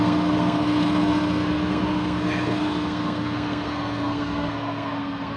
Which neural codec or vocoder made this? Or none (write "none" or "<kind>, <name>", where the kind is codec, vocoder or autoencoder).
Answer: codec, SNAC